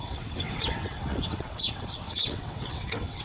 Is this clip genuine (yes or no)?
no